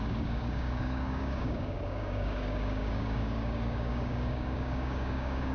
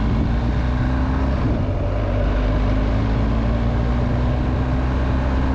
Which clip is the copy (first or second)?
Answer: first